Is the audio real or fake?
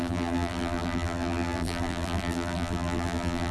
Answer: fake